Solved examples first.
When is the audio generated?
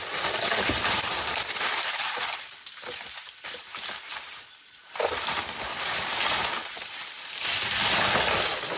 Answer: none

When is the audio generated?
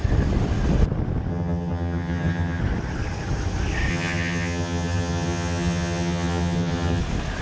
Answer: 1.3-2.6; 3.9-7.0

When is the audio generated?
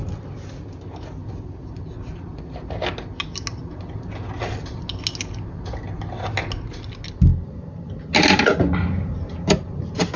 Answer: none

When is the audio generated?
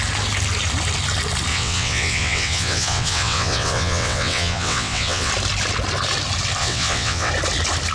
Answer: 1.5-5.3; 6.6-7.3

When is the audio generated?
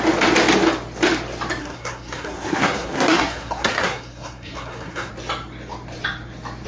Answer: 1.6-5.1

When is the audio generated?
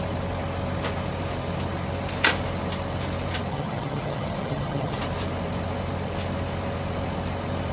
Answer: 3.5-5.0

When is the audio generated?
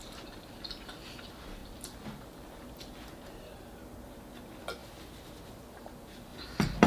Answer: none